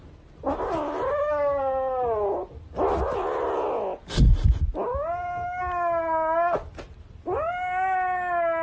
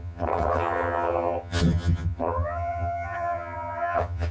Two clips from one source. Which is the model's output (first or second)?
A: second